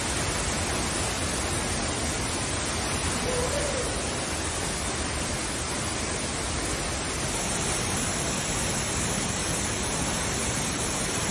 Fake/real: real